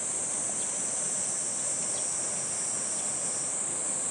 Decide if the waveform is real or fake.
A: real